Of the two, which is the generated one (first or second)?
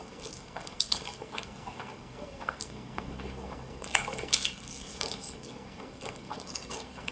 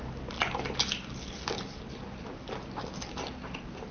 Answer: first